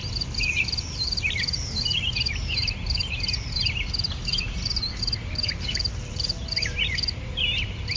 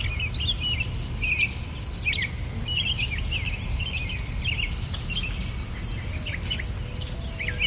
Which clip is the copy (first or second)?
first